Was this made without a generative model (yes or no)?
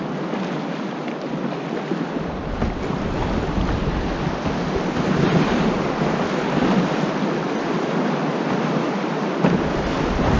yes